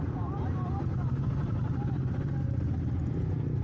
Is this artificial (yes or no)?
no